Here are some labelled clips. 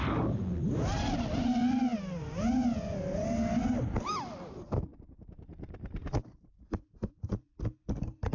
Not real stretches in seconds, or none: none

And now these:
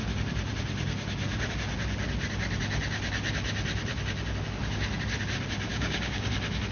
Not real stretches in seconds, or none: 5.7-6.3 (codec, DAC)

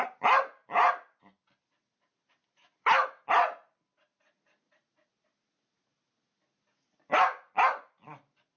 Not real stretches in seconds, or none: none

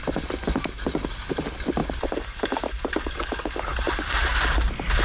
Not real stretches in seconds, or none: none

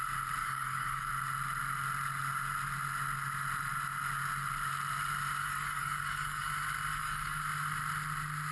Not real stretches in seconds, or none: 0.4-1.1 (codec, DAC); 5.4-6.5; 6.9-7.4

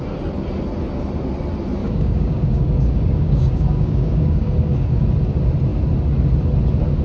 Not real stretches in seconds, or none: 1.8-5.0 (codec, DAC)